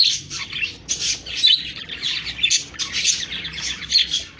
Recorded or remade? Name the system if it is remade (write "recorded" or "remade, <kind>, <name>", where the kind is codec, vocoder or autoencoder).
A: remade, vocoder, BigVGAN v2